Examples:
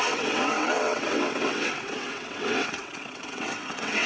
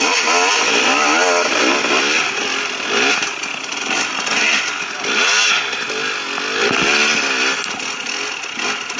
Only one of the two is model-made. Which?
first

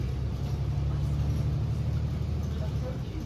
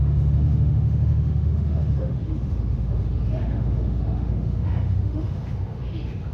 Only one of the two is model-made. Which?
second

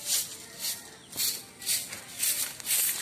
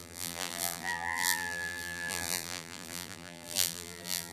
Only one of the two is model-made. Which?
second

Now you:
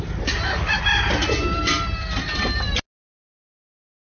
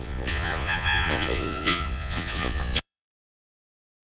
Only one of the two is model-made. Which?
second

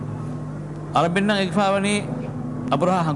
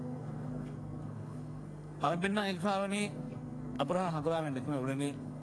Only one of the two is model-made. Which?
second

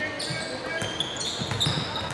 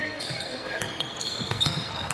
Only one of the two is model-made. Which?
second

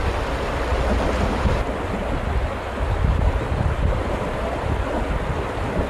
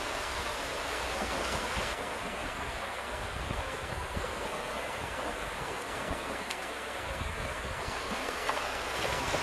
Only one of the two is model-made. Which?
second